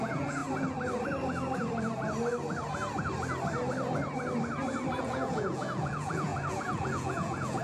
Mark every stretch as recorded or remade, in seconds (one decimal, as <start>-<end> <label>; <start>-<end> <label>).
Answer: 0.0-0.4 remade; 0.4-5.0 recorded; 5.0-7.6 remade